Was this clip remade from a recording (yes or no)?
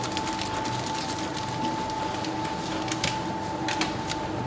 no